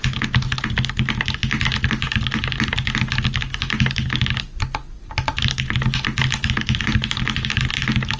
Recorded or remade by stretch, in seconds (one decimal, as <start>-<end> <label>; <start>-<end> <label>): 0.0-8.2 recorded